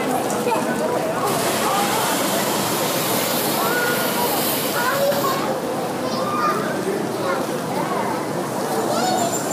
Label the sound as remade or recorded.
recorded